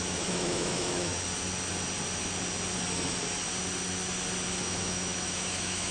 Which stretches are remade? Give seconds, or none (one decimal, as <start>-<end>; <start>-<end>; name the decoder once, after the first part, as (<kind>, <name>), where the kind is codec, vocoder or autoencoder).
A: 0.0-1.1 (autoencoder, DAC-VAE); 4.6-5.9